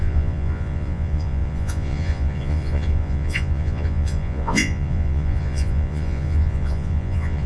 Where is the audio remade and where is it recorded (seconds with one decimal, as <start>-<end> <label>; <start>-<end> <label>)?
0.0-7.5 remade